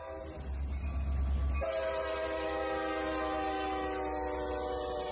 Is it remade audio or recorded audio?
recorded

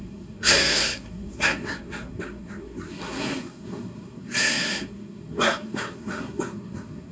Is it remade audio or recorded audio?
remade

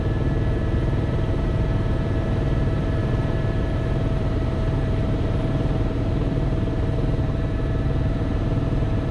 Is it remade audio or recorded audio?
remade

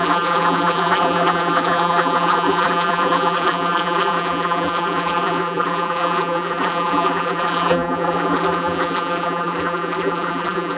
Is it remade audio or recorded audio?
remade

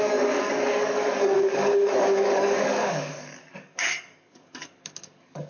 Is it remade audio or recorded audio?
remade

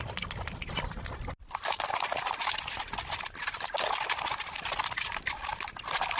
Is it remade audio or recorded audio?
recorded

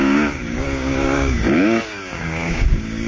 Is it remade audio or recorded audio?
remade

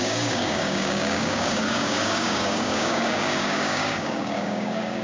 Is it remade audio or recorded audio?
remade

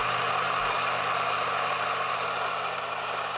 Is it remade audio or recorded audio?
recorded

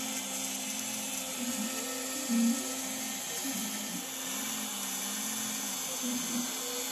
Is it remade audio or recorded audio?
recorded